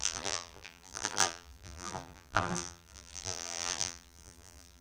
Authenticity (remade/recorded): remade